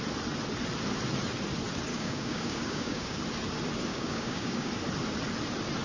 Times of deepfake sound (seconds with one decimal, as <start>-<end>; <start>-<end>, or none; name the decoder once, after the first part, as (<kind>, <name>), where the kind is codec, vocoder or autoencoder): 1.9-3.2 (codec, DAC); 3.9-4.7